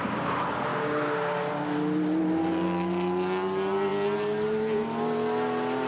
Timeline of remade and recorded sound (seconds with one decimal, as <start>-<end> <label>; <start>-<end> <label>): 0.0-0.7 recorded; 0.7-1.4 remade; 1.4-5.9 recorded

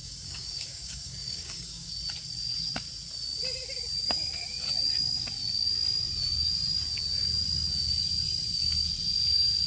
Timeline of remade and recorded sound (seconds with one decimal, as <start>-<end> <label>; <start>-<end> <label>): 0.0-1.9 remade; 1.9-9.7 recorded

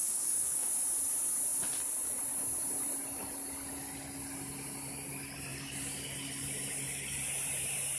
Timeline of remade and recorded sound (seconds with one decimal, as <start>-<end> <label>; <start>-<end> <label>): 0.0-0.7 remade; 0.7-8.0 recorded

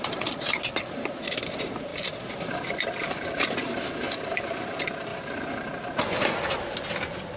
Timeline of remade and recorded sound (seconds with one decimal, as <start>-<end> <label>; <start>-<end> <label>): 0.0-7.4 recorded